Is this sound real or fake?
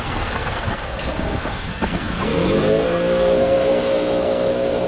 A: fake